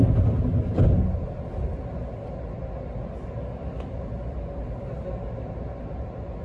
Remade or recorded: recorded